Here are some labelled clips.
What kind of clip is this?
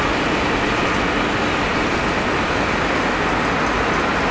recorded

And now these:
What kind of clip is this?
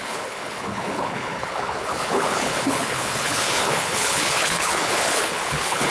remade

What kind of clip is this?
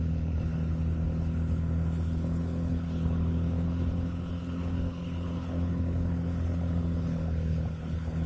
remade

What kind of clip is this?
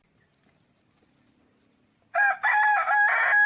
recorded